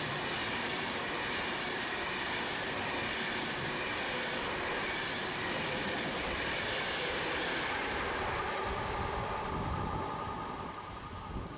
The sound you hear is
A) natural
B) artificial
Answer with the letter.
B